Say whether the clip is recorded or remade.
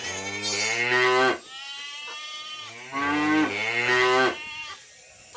recorded